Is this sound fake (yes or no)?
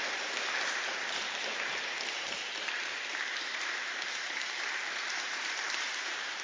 yes